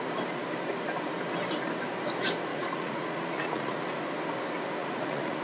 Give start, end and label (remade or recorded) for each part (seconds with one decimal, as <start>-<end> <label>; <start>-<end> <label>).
0.0-2.5 recorded; 2.5-3.8 remade; 3.8-4.8 recorded; 4.8-5.4 remade